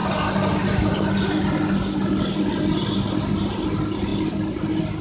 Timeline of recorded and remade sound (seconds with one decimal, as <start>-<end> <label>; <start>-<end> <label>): 0.0-5.0 recorded